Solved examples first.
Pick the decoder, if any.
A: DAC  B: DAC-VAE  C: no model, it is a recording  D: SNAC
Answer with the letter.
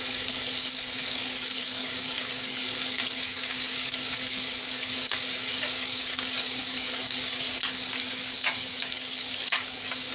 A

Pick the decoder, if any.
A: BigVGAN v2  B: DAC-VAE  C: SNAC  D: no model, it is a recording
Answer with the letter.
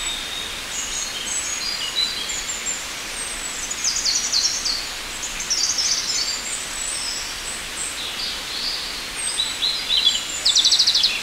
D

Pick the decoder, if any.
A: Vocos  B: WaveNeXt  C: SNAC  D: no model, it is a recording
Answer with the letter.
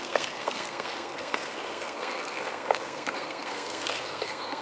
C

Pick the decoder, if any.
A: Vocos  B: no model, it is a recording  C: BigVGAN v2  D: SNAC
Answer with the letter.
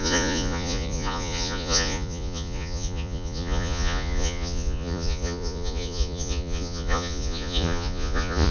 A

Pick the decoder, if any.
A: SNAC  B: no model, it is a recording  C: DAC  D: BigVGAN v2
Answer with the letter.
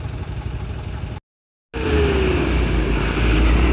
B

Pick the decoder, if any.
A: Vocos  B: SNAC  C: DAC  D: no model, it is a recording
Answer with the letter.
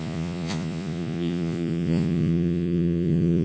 A